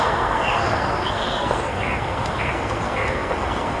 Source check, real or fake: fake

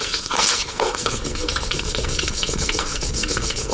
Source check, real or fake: fake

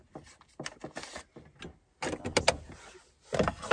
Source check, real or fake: real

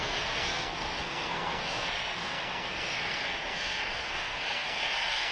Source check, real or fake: fake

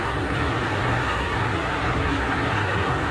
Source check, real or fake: fake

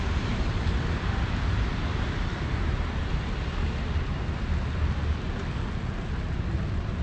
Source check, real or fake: real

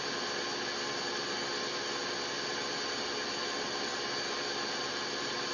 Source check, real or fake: real